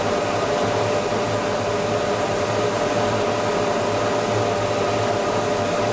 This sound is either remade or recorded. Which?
recorded